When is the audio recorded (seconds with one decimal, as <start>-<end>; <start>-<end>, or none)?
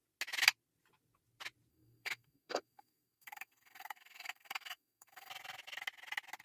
0.0-1.7; 5.3-6.4